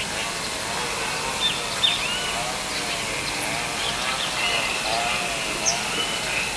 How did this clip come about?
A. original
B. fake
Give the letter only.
A